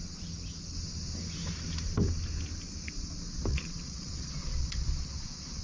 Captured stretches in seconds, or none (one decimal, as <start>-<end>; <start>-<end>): 0.0-3.5

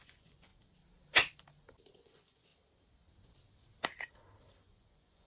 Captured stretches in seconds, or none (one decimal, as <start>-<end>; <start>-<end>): 0.5-1.9; 2.5-4.6